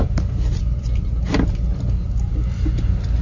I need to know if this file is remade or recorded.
recorded